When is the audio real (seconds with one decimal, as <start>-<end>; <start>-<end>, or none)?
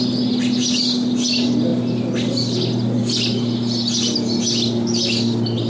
0.0-5.7